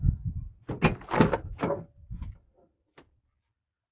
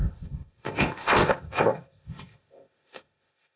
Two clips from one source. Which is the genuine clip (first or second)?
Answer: first